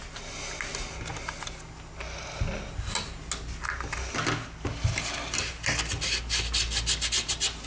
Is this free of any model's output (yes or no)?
yes